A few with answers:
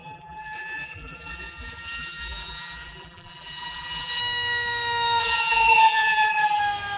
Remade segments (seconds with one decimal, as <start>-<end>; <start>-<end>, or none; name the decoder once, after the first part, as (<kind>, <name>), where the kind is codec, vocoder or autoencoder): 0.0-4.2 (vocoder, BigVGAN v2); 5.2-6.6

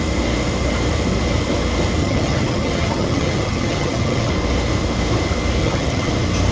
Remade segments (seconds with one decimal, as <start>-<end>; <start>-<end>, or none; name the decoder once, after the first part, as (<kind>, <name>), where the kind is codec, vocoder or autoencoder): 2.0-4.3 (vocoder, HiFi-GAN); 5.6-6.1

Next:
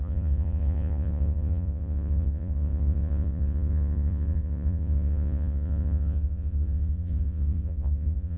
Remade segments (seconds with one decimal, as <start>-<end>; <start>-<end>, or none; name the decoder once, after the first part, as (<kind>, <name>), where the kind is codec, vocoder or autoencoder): 0.0-8.4 (vocoder, Vocos)